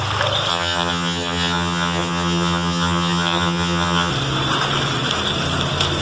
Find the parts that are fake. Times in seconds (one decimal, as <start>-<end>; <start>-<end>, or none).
0.5-4.1